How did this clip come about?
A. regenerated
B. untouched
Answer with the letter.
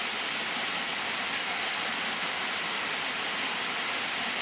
B